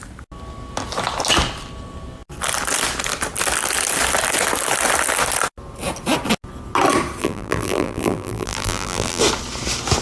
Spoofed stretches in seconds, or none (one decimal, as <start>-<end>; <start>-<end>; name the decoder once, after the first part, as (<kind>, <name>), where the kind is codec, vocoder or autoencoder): 7.2-9.2 (vocoder, BigVGAN v2)